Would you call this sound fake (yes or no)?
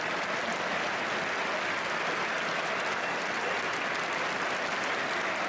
no